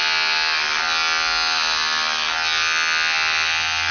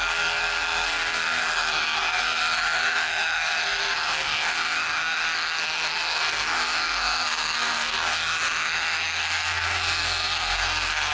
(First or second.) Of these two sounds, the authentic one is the first